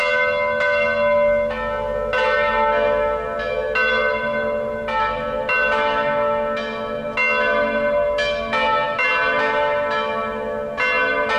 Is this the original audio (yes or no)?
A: yes